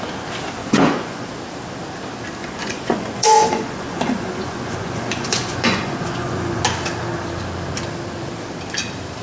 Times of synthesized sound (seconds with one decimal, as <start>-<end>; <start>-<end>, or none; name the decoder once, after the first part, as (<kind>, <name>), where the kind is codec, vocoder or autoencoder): 0.6-1.3 (vocoder, Vocos); 2.4-6.6

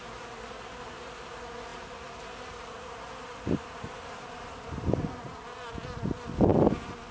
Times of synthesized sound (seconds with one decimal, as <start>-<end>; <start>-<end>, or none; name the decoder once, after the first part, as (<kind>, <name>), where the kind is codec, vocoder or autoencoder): none

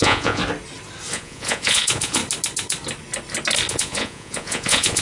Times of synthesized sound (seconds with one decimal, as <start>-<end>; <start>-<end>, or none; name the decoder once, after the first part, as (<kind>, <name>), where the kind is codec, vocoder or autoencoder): 0.0-0.4 (vocoder, Vocos); 1.1-2.2; 3.7-5.0

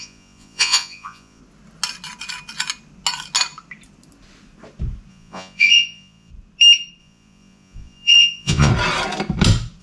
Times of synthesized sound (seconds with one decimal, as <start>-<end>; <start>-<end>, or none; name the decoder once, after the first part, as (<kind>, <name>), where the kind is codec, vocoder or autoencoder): 0.0-1.4 (vocoder, Vocos); 5.1-6.3; 7.0-8.7

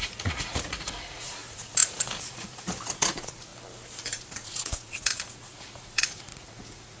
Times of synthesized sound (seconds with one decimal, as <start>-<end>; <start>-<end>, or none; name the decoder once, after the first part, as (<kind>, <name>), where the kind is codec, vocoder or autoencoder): 0.0-3.5 (vocoder, Vocos); 4.0-7.0

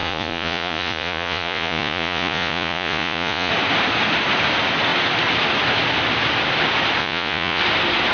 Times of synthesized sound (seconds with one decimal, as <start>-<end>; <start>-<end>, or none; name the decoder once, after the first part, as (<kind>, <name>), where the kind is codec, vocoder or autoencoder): 0.0-3.5 (vocoder, Vocos); 7.0-7.6

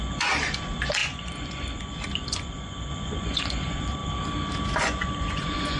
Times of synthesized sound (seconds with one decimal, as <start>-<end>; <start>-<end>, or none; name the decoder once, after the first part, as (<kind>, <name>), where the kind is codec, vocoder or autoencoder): 0.0-4.0 (vocoder, Vocos); 4.8-5.8